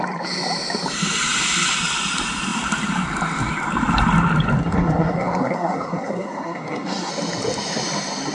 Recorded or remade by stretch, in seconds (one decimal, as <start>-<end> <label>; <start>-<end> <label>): 0.0-4.6 recorded; 4.6-7.1 remade; 7.1-8.3 recorded